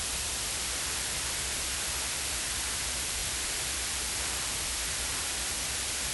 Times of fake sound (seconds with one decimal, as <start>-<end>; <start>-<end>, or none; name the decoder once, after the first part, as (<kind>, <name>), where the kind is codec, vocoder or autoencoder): 0.0-6.1 (vocoder, BigVGAN v2)